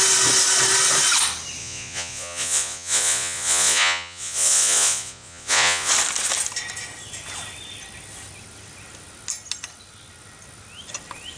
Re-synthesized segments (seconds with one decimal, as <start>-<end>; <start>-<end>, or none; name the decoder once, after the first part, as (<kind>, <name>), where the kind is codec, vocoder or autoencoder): 1.6-5.9 (vocoder, Vocos)